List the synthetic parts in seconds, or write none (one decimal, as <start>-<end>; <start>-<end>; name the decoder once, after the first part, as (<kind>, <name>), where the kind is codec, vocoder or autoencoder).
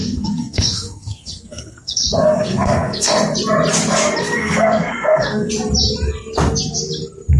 0.0-3.1 (codec, SNAC); 4.2-5.5